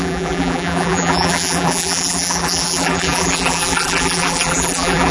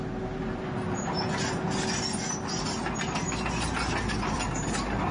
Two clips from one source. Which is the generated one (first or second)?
first